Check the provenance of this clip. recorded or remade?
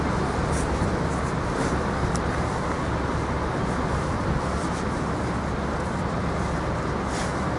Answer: recorded